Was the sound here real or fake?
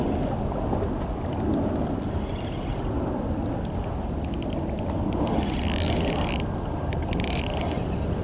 real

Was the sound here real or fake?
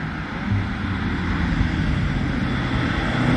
real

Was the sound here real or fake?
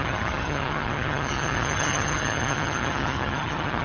fake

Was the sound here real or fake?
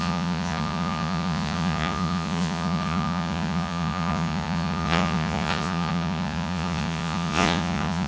fake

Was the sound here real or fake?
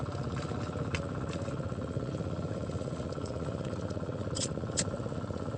fake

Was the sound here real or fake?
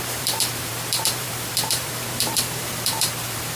fake